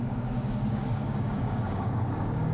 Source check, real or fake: fake